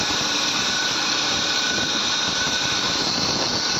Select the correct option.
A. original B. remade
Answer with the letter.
B